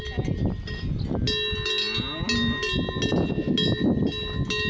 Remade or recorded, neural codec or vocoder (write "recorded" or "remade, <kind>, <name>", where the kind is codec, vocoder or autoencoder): recorded